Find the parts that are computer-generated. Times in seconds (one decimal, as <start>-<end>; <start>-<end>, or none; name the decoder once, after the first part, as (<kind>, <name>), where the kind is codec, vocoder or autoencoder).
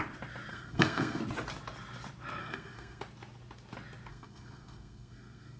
0.5-1.2 (codec, SNAC); 2.4-3.0; 4.1-5.6